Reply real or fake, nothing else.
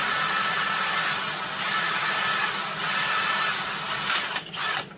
real